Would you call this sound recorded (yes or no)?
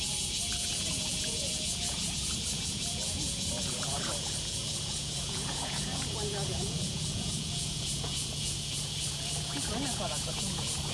no